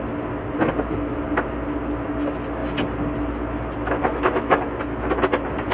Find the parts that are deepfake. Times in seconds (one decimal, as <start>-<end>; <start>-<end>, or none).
4.0-4.6